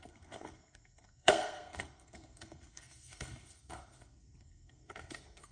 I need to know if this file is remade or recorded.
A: remade